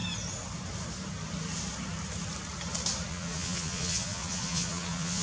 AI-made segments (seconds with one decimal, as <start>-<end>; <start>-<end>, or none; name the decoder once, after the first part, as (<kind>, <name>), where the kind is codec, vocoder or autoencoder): 3.1-5.2 (vocoder, Vocos)